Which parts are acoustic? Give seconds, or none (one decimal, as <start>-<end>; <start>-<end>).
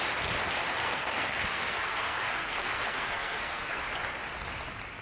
0.0-0.8; 3.8-5.0